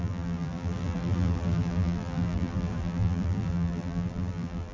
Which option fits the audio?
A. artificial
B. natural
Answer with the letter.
A